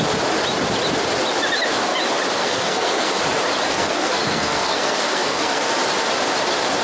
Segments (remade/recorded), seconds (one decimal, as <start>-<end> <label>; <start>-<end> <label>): 0.0-2.4 recorded; 2.4-3.2 remade; 3.2-3.7 recorded; 3.7-5.6 remade; 5.6-6.8 recorded